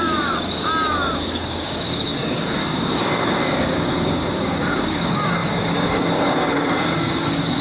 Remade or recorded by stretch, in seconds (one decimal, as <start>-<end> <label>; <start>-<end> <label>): 0.0-7.6 remade